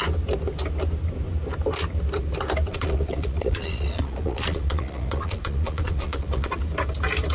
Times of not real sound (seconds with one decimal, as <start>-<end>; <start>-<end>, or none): 2.7-6.6